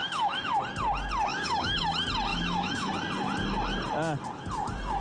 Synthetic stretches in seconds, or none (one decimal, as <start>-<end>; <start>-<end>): 0.0-0.5; 1.3-1.8; 2.3-2.9

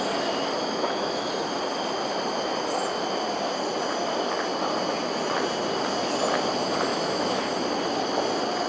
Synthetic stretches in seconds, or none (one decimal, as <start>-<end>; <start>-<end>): 0.6-1.3; 6.9-7.4